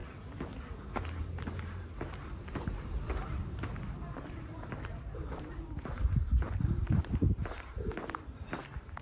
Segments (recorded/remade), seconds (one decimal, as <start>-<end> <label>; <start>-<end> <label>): 0.0-1.2 recorded; 1.2-9.0 remade